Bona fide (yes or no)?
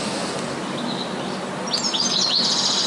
yes